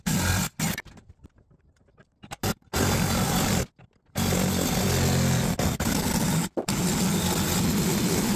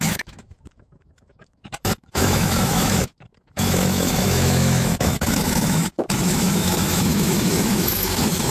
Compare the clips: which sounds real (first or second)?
first